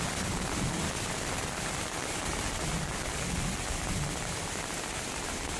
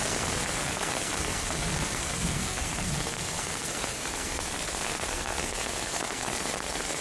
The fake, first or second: second